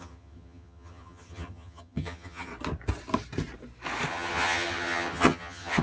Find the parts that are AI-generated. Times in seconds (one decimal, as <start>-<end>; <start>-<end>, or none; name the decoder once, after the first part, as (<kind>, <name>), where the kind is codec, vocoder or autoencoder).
0.0-2.5 (vocoder, HiFi-GAN); 4.1-5.8